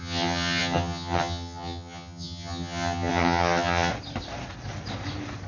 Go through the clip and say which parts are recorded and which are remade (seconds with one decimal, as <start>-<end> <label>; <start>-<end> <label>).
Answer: 0.0-3.9 remade; 3.9-5.5 recorded